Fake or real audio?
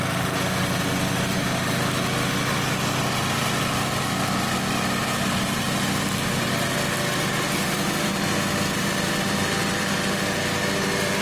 real